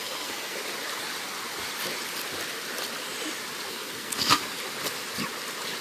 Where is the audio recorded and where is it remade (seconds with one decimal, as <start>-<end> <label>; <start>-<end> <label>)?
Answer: 0.0-0.6 remade; 0.6-3.7 recorded; 3.7-4.4 remade; 4.4-5.8 recorded